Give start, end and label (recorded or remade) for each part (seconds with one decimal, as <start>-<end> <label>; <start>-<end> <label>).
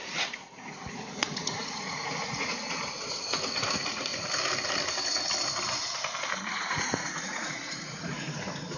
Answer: 0.0-4.1 remade; 4.1-6.5 recorded; 6.5-8.8 remade